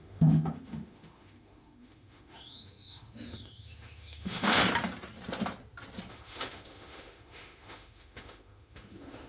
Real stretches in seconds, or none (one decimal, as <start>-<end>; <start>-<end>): 4.6-6.1